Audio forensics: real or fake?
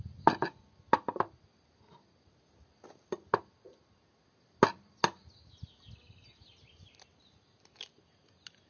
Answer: real